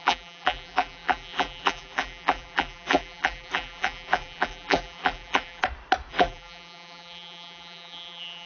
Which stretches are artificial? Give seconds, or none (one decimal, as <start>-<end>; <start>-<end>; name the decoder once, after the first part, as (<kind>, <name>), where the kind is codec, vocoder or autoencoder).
0.0-5.6 (vocoder, BigVGAN v2); 6.1-8.5